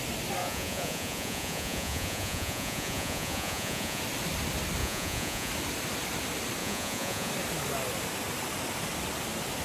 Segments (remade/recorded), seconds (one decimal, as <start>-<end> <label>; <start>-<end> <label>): 0.0-0.4 recorded; 0.4-4.0 remade; 4.0-4.8 recorded; 4.8-5.5 remade; 5.5-6.6 recorded; 6.6-7.3 remade; 7.3-9.6 recorded